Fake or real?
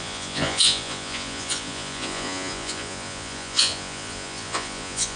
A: fake